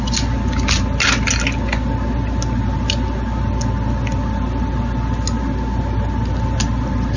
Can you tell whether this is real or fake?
real